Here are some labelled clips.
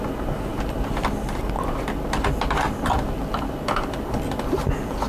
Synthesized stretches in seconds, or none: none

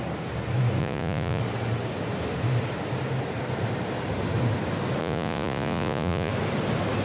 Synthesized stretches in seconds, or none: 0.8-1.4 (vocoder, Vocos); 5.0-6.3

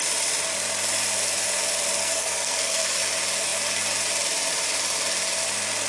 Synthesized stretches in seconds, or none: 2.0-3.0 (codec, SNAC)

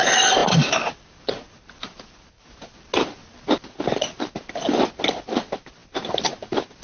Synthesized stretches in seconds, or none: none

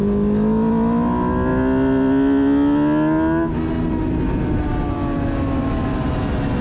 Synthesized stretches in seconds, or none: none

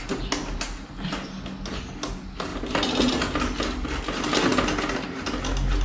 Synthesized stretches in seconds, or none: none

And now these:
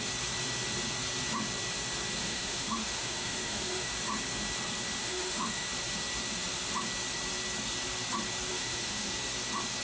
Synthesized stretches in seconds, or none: 2.2-3.9 (autoencoder, DAC-VAE); 5.0-5.7; 8.5-9.1